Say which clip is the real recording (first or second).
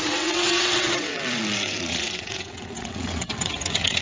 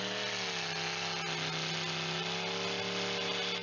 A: second